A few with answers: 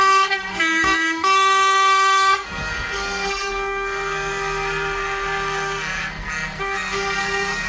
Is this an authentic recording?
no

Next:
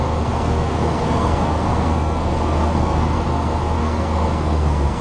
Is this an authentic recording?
no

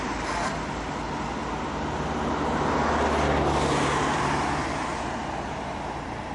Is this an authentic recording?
yes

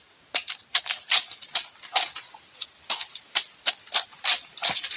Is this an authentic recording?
yes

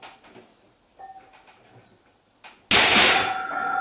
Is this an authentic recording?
yes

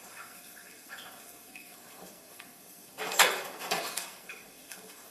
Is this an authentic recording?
no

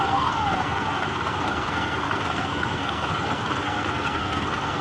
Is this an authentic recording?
no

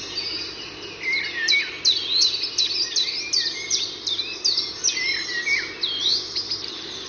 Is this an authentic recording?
yes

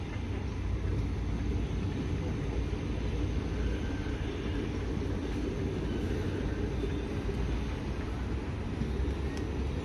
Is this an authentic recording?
yes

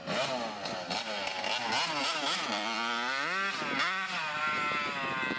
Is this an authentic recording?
yes